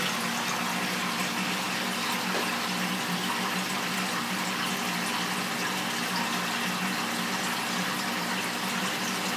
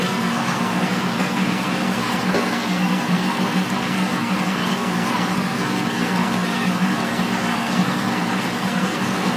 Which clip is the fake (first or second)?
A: second